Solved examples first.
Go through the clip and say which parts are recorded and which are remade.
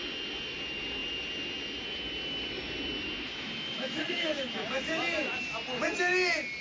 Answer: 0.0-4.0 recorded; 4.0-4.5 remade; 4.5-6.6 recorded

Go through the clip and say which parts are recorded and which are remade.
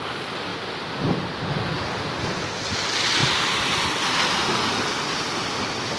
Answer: 0.0-6.0 recorded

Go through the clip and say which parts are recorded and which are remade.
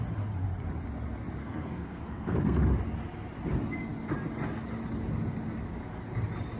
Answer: 0.0-1.4 recorded; 1.4-2.6 remade; 2.6-6.6 recorded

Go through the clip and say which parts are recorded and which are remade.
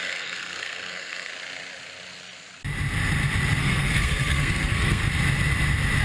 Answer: 0.0-1.3 remade; 1.3-3.6 recorded; 3.6-5.0 remade; 5.0-6.0 recorded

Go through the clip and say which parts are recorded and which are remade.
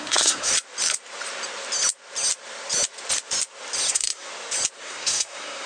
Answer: 0.0-0.5 remade; 0.5-3.9 recorded; 3.9-4.3 remade; 4.3-4.8 recorded; 4.8-5.7 remade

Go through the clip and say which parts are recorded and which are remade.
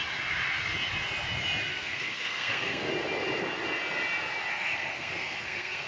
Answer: 0.0-1.7 recorded; 1.7-2.9 remade; 2.9-4.5 recorded; 4.5-5.9 remade